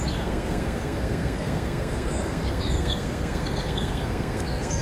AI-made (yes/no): yes